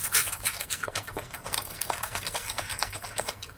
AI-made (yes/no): yes